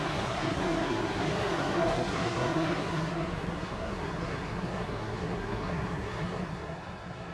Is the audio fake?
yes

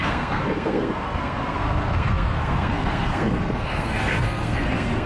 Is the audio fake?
yes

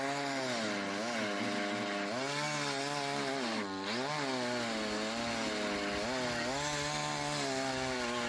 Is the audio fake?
no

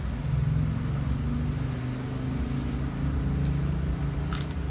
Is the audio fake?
no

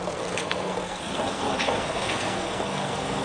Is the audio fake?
yes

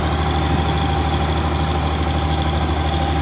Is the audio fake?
no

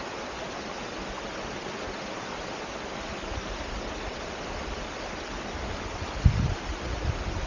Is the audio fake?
no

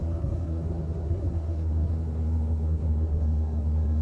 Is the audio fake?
yes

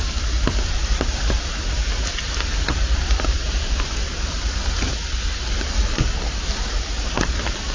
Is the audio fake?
no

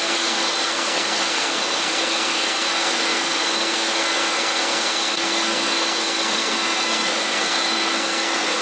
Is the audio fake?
yes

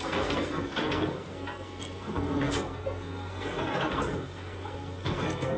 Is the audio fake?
yes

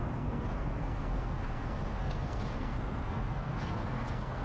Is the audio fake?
yes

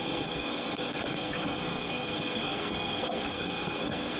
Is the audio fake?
yes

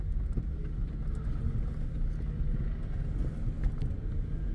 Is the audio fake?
no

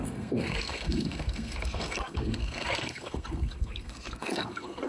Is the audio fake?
yes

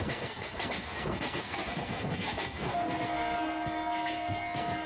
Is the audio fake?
yes